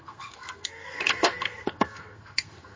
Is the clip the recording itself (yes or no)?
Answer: no